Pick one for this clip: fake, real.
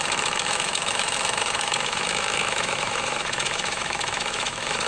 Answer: fake